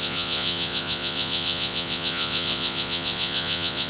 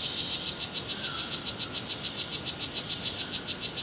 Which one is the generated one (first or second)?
first